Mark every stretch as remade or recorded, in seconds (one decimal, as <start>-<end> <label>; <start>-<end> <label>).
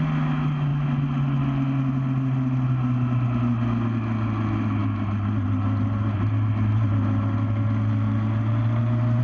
0.0-9.2 recorded